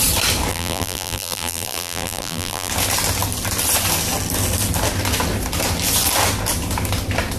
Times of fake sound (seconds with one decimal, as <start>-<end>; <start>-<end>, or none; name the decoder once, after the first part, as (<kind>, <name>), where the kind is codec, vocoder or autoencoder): 0.5-2.7 (vocoder, BigVGAN v2)